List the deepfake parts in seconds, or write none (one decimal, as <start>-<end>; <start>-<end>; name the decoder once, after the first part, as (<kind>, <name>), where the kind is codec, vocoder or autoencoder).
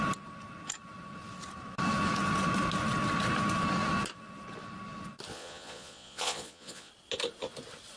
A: 5.3-6.9 (vocoder, Vocos)